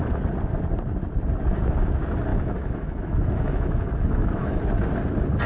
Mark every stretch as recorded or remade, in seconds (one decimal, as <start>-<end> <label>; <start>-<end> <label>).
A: 0.0-2.3 recorded; 2.3-4.6 remade; 4.6-5.5 recorded